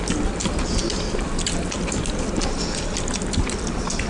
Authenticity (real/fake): real